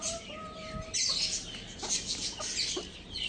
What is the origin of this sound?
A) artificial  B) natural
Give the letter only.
B